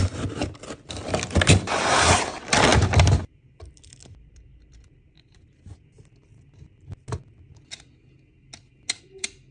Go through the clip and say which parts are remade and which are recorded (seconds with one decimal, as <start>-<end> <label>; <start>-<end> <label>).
0.0-2.7 remade; 2.7-3.2 recorded; 3.2-4.5 remade; 4.5-9.0 recorded; 9.0-9.5 remade